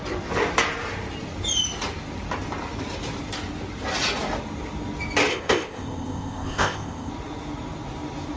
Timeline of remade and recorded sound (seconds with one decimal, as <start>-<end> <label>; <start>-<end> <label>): 0.0-5.3 recorded; 5.3-7.1 remade; 7.1-8.4 recorded